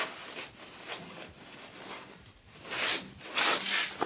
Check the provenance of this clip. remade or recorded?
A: recorded